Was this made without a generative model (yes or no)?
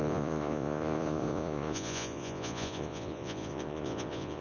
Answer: no